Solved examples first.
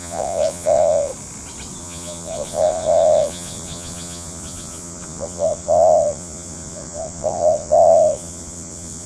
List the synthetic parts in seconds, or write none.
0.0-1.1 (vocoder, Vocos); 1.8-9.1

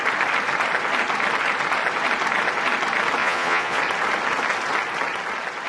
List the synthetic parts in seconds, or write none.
3.2-3.8 (vocoder, Vocos)

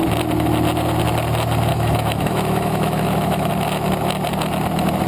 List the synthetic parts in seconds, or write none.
1.7-3.5 (autoencoder, DAC-VAE)

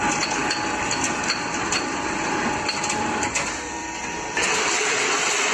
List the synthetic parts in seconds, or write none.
0.0-0.4 (vocoder, BigVGAN v2); 3.7-5.5

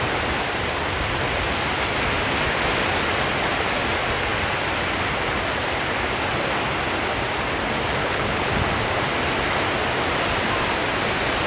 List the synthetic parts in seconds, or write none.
8.0-8.5 (codec, HILCodec)